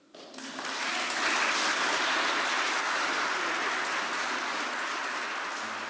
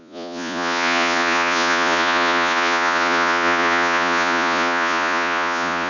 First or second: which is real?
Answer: first